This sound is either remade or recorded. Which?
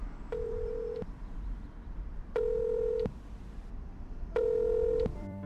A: remade